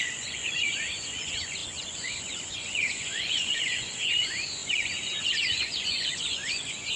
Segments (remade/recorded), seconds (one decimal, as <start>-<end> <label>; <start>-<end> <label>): 0.0-7.0 remade